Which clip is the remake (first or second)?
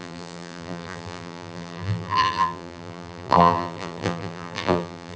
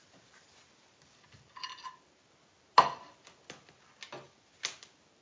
first